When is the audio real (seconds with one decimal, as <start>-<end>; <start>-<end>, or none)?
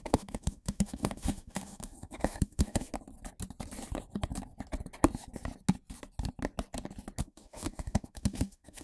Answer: 2.9-7.2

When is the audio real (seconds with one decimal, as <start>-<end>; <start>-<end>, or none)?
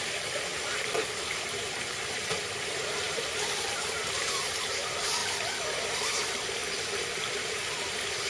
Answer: 6.6-7.3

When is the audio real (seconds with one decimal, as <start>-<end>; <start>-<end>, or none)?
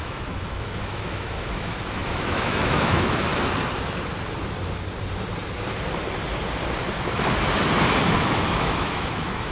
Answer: 3.3-8.1